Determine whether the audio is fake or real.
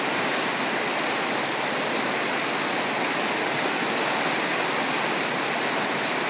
real